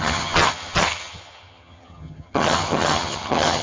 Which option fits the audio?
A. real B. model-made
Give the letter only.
B